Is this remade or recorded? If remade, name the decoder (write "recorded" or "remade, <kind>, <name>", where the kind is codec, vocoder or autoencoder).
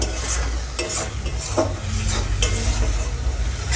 recorded